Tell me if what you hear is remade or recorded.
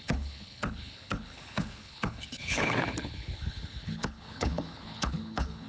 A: remade